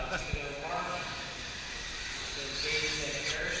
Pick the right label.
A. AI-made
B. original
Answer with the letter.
B